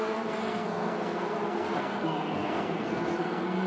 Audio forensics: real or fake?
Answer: fake